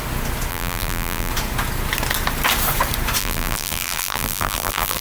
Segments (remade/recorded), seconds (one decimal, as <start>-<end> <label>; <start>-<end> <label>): 0.0-0.5 recorded; 0.5-1.3 remade; 1.3-3.2 recorded; 3.2-5.0 remade